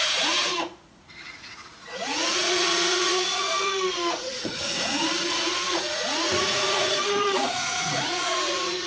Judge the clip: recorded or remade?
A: remade